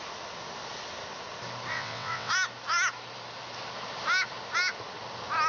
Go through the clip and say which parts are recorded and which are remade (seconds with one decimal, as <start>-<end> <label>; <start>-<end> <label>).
0.0-1.7 recorded; 1.7-2.3 remade; 2.3-5.5 recorded